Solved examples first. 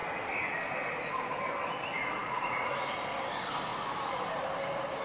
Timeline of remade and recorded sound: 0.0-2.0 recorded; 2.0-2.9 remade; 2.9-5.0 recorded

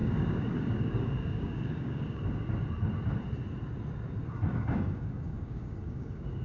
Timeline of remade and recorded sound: 0.0-2.2 remade; 2.2-4.5 recorded; 4.5-6.4 remade

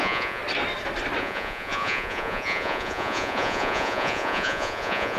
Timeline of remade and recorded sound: 0.0-0.4 remade; 0.4-1.2 recorded; 1.2-5.2 remade

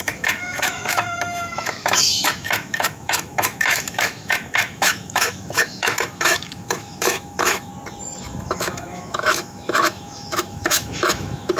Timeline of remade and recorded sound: 0.0-7.7 remade; 7.7-8.2 recorded; 8.2-11.6 remade

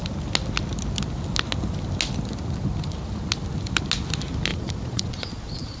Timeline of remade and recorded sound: 0.0-4.5 recorded; 4.5-5.8 remade